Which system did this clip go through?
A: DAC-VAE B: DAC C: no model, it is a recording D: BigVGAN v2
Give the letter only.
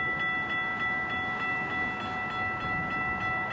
C